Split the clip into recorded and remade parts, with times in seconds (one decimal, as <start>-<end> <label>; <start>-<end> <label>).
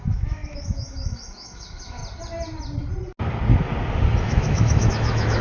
0.0-2.0 remade; 2.0-4.2 recorded; 4.2-5.4 remade